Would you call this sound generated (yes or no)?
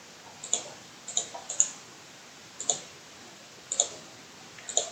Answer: no